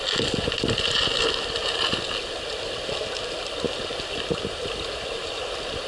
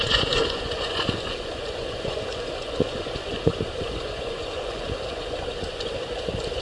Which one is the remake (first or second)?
second